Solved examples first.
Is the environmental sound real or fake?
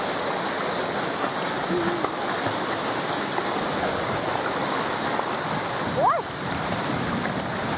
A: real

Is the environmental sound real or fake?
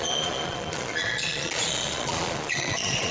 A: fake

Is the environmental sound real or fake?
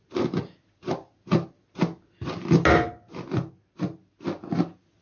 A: real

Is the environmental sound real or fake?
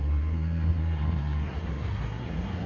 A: fake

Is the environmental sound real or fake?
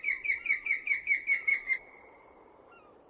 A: fake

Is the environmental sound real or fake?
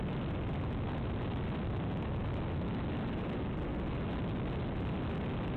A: real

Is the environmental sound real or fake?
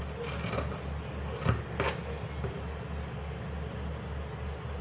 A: real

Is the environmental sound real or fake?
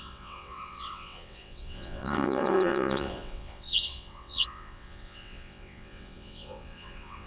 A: fake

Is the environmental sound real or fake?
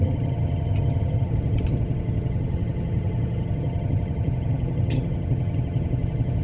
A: fake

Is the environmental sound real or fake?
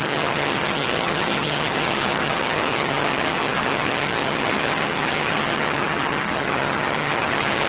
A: fake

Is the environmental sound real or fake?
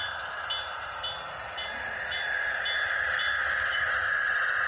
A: real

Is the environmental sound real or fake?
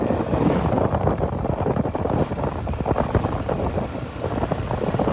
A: real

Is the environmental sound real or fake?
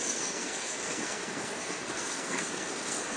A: fake